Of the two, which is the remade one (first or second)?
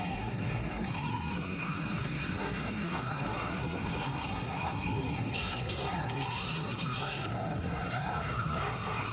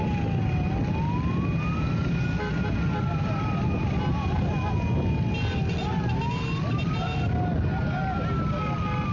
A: first